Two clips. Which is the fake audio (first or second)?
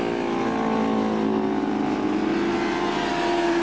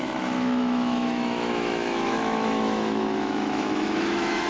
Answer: second